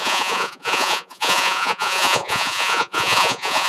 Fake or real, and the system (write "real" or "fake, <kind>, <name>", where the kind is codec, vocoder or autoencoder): fake, vocoder, Vocos